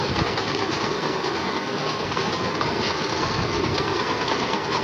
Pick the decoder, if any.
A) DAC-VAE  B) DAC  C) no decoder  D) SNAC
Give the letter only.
D